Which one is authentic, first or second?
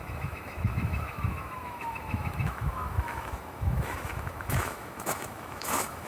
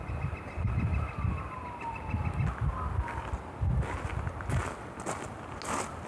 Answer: second